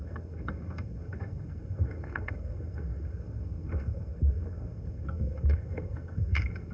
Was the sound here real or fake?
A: fake